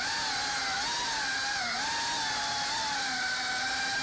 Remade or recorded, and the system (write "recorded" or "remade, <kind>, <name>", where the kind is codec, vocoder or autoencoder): recorded